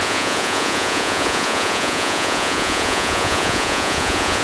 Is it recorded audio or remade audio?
remade